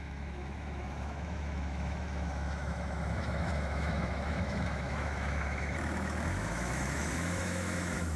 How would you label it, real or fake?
fake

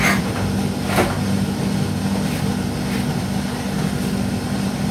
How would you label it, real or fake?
real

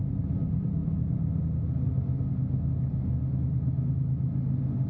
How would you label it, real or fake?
real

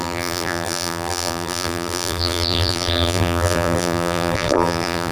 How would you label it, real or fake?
fake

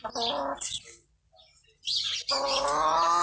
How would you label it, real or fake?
real